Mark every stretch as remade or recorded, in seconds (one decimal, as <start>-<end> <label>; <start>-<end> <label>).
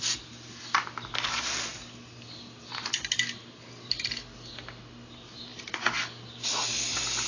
0.0-7.3 recorded